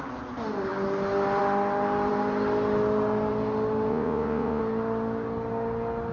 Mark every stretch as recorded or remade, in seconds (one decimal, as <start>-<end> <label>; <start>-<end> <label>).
0.0-3.9 recorded; 3.9-4.6 remade; 4.6-6.1 recorded